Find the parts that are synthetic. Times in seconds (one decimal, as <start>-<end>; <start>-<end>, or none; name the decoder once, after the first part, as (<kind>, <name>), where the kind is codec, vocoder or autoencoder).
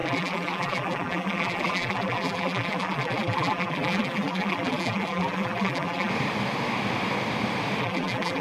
0.0-6.1 (vocoder, BigVGAN v2); 7.8-8.4